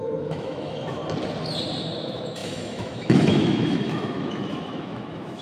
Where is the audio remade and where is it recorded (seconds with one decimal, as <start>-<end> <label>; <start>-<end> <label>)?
0.0-1.0 remade; 1.0-2.0 recorded; 2.0-5.4 remade